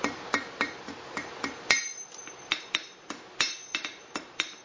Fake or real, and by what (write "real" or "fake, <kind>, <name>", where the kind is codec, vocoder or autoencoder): fake, vocoder, BigVGAN v2